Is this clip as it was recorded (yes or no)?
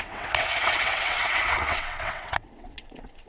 no